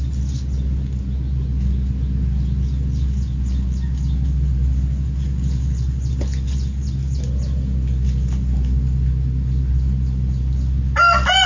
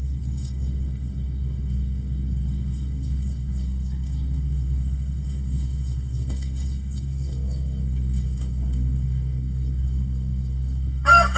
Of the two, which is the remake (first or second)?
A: second